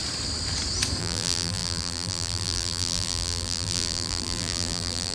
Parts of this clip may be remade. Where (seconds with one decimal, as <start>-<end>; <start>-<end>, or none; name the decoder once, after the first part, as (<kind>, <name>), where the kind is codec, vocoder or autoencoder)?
1.0-5.1 (vocoder, BigVGAN v2)